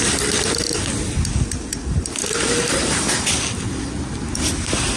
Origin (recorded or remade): recorded